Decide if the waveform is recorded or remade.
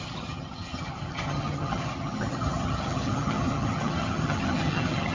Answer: remade